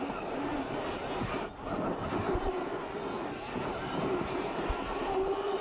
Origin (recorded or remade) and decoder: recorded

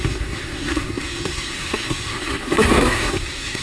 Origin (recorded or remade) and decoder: remade, codec, SNAC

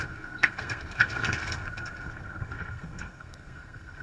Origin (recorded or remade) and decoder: remade, codec, SNAC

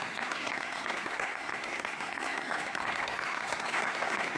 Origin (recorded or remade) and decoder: remade, codec, SNAC